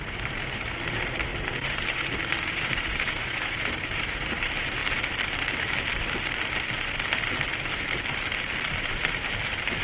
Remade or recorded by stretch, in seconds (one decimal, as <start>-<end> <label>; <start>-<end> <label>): 0.0-4.8 remade; 4.8-8.9 recorded; 8.9-9.8 remade

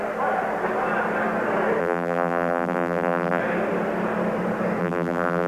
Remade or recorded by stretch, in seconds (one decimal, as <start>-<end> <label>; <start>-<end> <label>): 0.0-1.8 recorded; 1.8-3.4 remade; 3.4-4.8 recorded; 4.8-5.5 remade